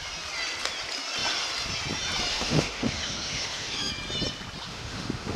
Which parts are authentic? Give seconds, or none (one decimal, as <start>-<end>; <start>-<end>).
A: 0.0-2.3; 3.9-4.7